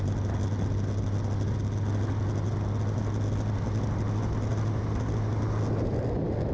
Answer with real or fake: real